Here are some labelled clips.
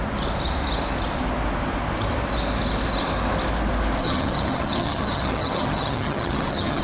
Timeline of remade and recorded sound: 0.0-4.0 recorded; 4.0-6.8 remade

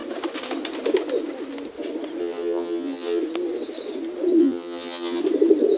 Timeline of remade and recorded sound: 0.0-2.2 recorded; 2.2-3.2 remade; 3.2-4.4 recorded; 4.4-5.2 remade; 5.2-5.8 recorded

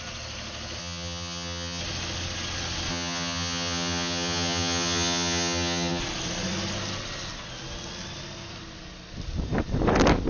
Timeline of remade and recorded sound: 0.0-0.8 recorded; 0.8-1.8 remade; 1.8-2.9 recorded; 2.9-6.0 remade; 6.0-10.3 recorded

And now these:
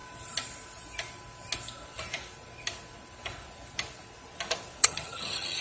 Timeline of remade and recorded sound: 0.0-4.8 recorded; 4.8-5.6 remade

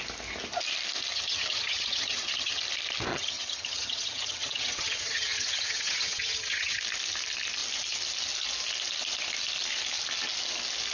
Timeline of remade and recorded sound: 0.0-1.1 recorded; 1.1-2.6 remade; 2.6-3.1 recorded; 3.1-6.8 remade; 6.8-10.9 recorded

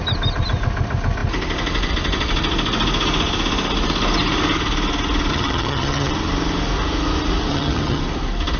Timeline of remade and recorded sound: 0.0-5.3 recorded; 5.3-6.1 remade; 6.1-7.5 recorded; 7.5-8.0 remade; 8.0-8.6 recorded

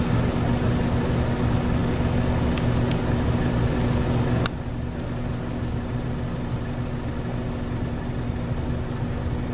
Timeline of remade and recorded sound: 0.0-9.5 recorded

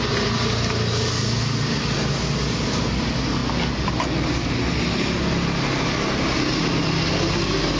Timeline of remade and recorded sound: 0.0-7.8 recorded